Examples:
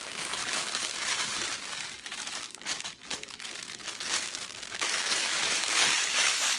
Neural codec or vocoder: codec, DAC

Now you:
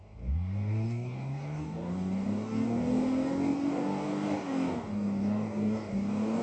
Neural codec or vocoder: codec, DAC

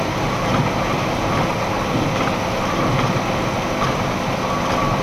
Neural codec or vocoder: none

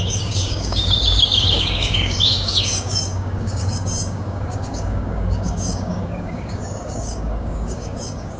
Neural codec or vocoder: codec, DAC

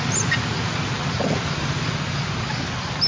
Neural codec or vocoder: none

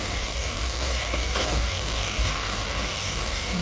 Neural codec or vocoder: codec, DAC